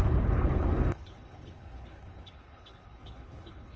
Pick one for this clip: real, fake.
fake